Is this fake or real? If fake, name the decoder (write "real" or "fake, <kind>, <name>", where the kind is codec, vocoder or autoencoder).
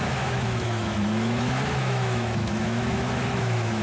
fake, autoencoder, DAC-VAE